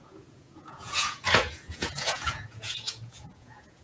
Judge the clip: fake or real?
fake